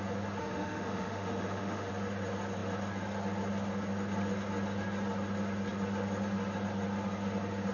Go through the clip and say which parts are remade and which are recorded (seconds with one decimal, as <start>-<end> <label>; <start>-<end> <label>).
0.0-0.4 recorded; 0.4-1.9 remade; 1.9-7.7 recorded